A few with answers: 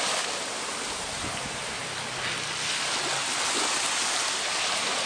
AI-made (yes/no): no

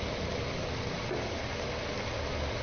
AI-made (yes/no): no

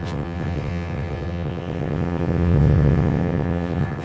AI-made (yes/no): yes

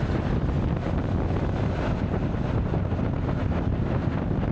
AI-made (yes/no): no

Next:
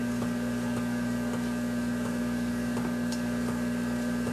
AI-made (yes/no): yes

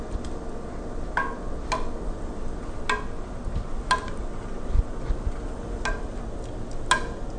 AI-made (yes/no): no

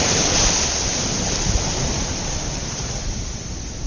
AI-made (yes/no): yes